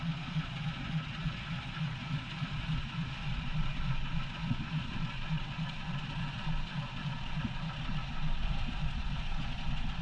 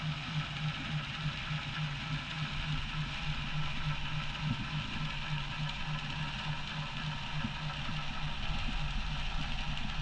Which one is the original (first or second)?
second